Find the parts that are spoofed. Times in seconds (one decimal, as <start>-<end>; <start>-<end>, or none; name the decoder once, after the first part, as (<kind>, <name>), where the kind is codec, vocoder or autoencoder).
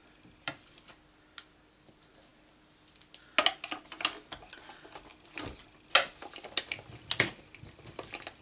none